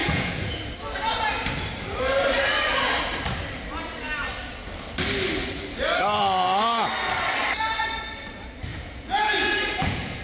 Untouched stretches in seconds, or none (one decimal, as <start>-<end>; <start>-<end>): 0.6-8.7